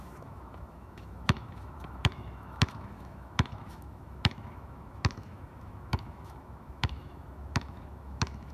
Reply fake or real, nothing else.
fake